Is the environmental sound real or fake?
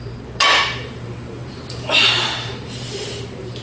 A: fake